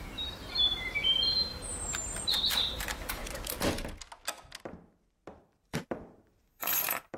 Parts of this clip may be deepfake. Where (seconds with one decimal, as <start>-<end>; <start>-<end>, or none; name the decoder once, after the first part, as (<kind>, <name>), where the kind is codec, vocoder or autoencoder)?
0.0-3.2 (vocoder, BigVGAN v2); 5.4-7.2